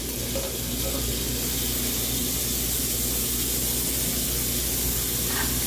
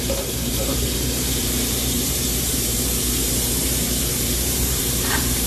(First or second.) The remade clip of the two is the second